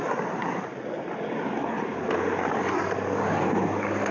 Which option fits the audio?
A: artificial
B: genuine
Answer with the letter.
B